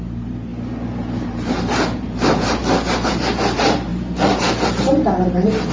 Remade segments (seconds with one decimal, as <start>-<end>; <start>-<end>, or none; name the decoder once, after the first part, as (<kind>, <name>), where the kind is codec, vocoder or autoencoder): 0.0-0.5 (vocoder, BigVGAN v2); 1.1-2.6; 3.1-5.7